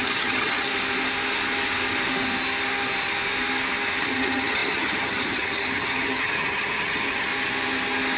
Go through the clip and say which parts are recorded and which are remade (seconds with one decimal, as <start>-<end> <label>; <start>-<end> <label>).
0.0-0.7 remade; 0.7-4.0 recorded; 4.0-7.3 remade; 7.3-8.2 recorded